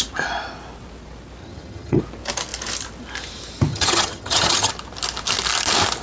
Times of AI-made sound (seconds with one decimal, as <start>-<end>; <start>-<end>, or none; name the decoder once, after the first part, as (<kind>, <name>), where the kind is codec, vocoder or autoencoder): 1.4-2.0 (vocoder, HiFi-GAN); 3.7-4.7

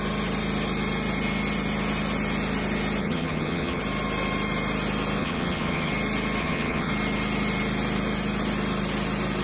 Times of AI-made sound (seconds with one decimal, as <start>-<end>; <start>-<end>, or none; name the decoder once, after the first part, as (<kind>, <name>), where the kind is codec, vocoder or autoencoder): 3.0-3.8 (vocoder, HiFi-GAN); 5.2-5.9; 6.4-6.9